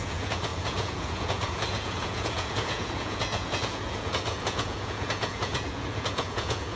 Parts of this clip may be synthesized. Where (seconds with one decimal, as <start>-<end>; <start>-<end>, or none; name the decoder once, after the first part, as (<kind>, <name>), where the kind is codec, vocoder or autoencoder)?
0.0-6.8 (vocoder, Vocos)